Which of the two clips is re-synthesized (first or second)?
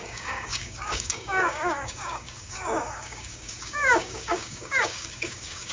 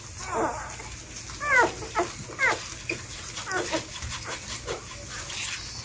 first